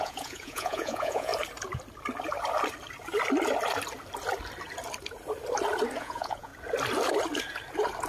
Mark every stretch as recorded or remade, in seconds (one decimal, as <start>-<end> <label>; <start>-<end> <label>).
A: 0.0-1.3 remade; 1.3-6.0 recorded; 6.0-6.5 remade; 6.5-8.1 recorded